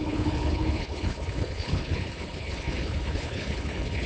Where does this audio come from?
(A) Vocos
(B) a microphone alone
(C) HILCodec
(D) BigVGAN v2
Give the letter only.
C